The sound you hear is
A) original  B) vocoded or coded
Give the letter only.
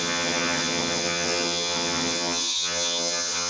B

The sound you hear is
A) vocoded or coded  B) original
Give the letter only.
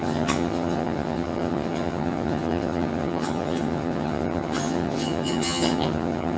A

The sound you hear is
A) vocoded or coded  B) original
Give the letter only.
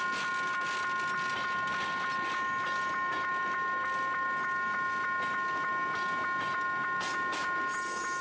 B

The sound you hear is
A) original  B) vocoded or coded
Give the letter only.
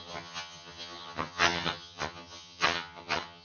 B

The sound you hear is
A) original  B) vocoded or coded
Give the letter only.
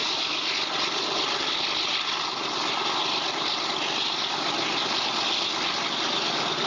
A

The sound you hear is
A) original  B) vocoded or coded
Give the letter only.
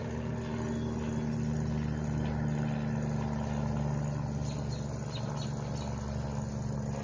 A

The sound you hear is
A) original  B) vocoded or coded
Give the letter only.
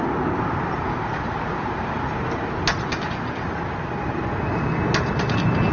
A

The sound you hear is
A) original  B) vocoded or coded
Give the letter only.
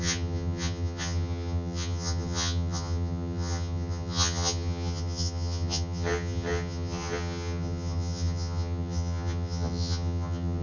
B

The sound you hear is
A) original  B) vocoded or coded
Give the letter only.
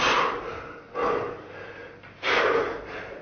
A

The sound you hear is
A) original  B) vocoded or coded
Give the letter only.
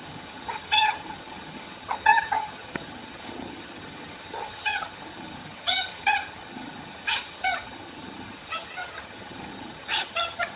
B